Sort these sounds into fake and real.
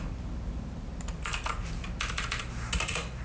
real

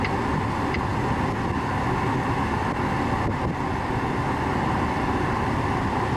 real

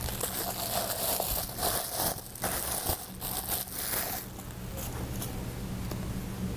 real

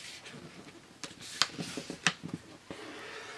real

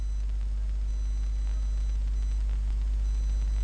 real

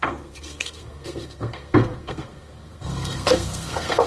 fake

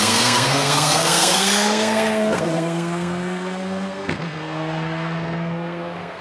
fake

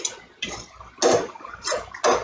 real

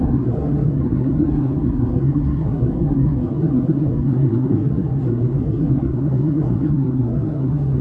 fake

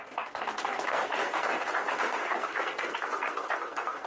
fake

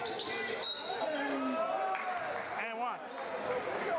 real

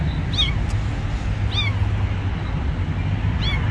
real